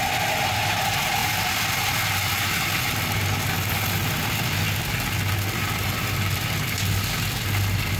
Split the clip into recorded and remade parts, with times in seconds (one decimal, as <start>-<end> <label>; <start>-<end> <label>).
0.0-8.0 recorded